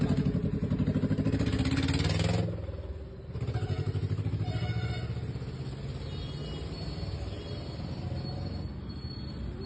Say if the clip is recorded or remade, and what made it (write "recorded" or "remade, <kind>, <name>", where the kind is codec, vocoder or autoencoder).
recorded